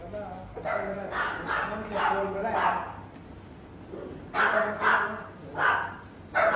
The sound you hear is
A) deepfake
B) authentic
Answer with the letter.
B